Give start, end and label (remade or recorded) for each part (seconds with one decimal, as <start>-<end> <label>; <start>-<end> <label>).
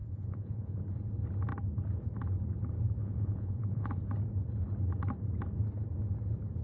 0.0-0.8 remade; 0.8-3.0 recorded; 3.0-4.0 remade; 4.0-6.6 recorded